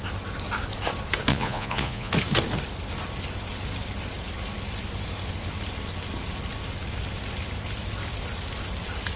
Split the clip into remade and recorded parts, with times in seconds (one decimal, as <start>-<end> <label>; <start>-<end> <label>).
0.0-1.3 recorded; 1.3-2.1 remade; 2.1-9.2 recorded